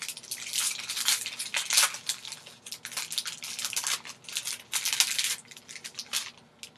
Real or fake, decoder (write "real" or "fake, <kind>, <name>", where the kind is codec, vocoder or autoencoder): real